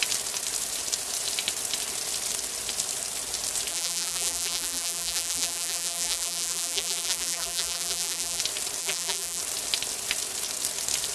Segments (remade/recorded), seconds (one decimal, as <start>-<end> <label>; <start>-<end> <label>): 0.0-3.7 recorded; 3.7-8.4 remade; 8.4-8.8 recorded; 8.8-9.4 remade; 9.4-11.1 recorded